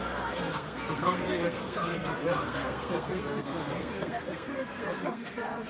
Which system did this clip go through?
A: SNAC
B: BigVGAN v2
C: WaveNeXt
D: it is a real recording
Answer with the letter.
A